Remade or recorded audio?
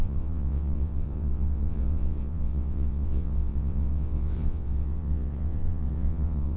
remade